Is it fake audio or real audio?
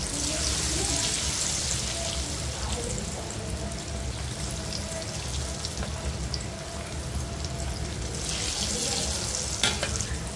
real